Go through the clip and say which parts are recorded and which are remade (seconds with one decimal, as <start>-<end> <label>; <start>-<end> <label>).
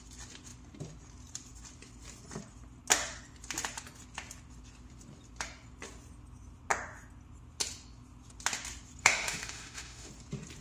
0.0-9.0 recorded; 9.0-10.1 remade; 10.1-10.6 recorded